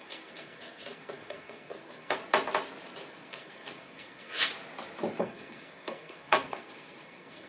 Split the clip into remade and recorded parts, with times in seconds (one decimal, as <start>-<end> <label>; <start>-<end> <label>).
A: 0.0-2.2 remade; 2.2-3.1 recorded; 3.1-4.5 remade; 4.5-5.2 recorded; 5.2-7.5 remade